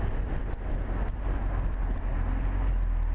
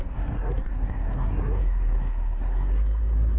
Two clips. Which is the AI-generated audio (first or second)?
second